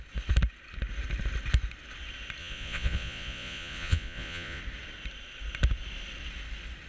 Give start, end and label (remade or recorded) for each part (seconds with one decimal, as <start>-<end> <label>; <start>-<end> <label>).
0.0-2.4 recorded; 2.4-4.6 remade; 4.6-6.9 recorded